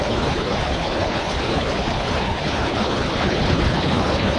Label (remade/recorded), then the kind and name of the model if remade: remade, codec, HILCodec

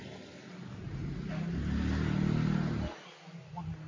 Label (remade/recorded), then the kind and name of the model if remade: recorded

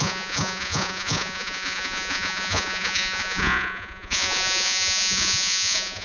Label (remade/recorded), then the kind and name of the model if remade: remade, vocoder, Vocos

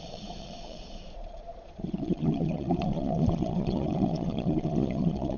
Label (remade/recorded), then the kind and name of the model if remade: remade, vocoder, Vocos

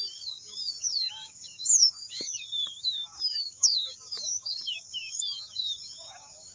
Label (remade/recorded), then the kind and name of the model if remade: remade, codec, DAC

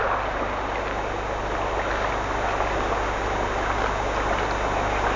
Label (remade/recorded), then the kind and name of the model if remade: recorded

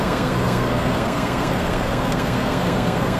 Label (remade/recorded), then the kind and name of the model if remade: remade, codec, SNAC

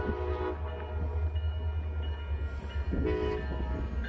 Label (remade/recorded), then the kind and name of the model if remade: recorded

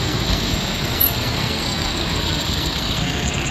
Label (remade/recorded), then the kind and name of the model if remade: remade, codec, SNAC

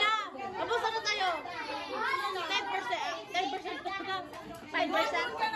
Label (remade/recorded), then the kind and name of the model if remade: recorded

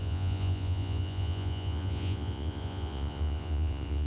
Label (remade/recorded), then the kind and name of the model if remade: remade, vocoder, Vocos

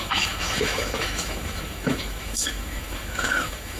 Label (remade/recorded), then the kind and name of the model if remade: remade, autoencoder, DAC-VAE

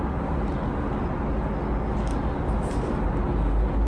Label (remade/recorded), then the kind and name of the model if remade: recorded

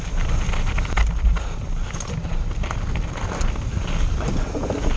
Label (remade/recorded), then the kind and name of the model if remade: recorded